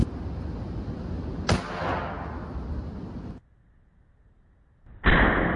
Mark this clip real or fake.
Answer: real